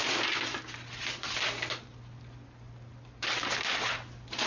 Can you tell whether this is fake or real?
real